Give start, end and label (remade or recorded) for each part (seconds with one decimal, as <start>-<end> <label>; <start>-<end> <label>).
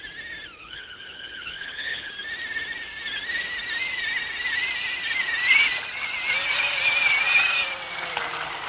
0.0-0.6 recorded; 0.6-2.1 remade; 2.1-8.7 recorded